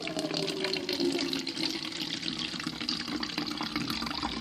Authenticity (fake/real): real